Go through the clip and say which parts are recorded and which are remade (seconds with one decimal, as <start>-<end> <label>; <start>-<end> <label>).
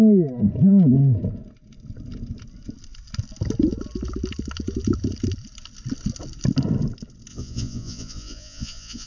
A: 0.0-7.3 recorded; 7.3-9.1 remade